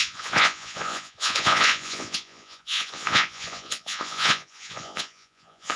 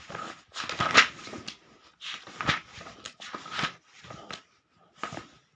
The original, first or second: second